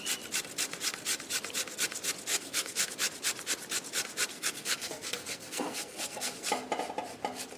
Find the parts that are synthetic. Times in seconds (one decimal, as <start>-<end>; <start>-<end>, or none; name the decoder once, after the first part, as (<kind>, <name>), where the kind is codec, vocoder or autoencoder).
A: 2.3-2.9 (codec, SNAC); 4.3-6.5